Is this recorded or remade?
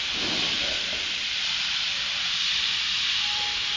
remade